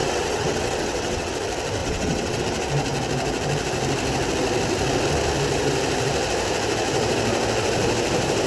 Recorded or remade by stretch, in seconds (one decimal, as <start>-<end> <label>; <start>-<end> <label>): 0.0-1.3 remade; 1.3-1.8 recorded; 1.8-2.4 remade; 2.4-8.5 recorded